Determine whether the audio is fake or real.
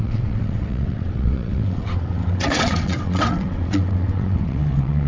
fake